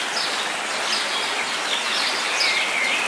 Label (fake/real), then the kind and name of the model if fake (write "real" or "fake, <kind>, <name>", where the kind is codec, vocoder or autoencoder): real